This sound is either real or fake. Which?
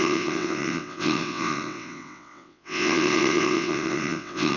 fake